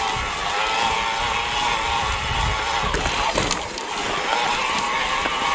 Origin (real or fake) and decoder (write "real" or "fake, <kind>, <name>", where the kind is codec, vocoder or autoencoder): real